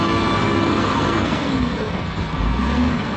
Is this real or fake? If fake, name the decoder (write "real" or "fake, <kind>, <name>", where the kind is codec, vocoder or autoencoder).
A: fake, codec, SNAC